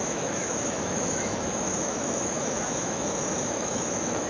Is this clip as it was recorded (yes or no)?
no